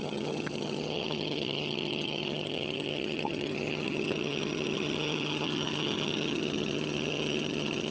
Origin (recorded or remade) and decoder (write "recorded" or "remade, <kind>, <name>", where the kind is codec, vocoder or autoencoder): remade, vocoder, HiFi-GAN